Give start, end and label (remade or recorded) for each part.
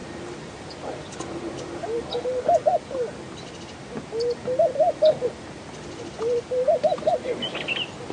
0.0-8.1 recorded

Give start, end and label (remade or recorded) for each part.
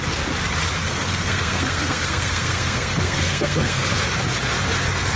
0.0-0.8 recorded; 0.8-3.9 remade; 3.9-5.2 recorded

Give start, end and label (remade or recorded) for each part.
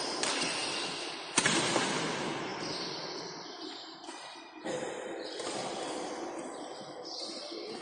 0.0-0.6 recorded; 0.6-2.1 remade; 2.1-2.5 recorded; 2.5-5.7 remade; 5.7-7.8 recorded